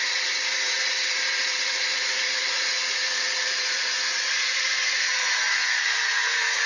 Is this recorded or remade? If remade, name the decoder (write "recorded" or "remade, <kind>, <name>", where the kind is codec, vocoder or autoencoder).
remade, vocoder, Vocos